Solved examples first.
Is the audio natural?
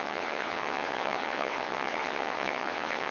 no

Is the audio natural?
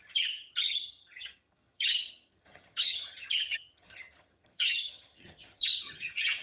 no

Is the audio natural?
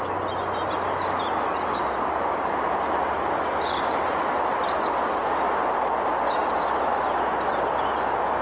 yes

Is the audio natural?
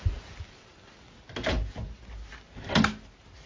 yes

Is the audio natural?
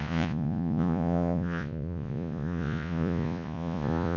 no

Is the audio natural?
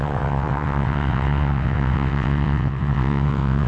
no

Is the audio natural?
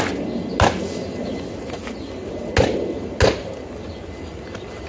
yes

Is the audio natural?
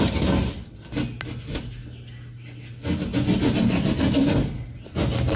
yes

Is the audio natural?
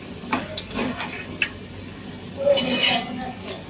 yes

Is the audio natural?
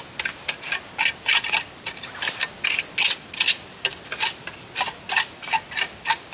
yes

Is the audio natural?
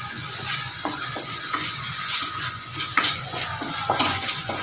no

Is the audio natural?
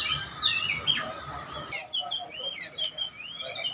yes